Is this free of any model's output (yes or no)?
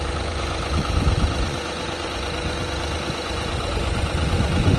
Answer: no